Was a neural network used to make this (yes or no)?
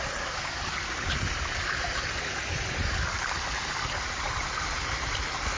no